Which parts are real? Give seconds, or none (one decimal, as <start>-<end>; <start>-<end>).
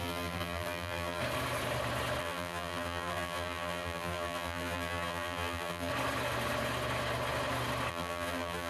1.2-2.2; 5.9-7.9